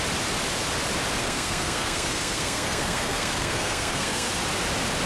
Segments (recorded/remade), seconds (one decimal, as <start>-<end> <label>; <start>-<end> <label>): 0.0-1.2 recorded; 1.2-4.3 remade; 4.3-5.1 recorded